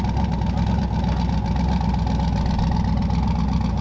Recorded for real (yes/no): yes